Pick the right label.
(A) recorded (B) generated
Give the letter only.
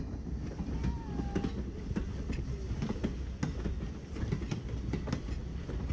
A